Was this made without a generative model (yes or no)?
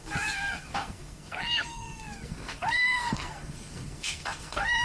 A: no